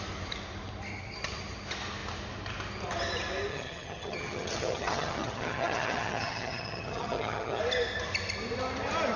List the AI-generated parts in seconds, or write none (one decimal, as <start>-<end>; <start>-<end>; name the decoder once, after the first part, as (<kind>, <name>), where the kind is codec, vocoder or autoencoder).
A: 3.5-7.6 (vocoder, HiFi-GAN)